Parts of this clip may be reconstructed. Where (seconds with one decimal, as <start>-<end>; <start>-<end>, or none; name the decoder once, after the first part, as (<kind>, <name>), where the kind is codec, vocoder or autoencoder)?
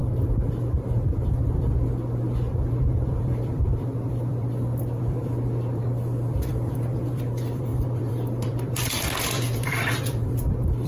2.8-5.8 (vocoder, BigVGAN v2); 6.5-10.9